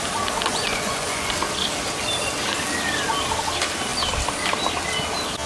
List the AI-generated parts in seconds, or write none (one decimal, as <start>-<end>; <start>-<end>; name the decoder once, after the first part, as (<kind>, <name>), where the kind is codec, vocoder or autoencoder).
0.5-1.3 (vocoder, Vocos)